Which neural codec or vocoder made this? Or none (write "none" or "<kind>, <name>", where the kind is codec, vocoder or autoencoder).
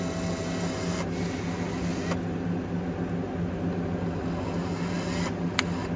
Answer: none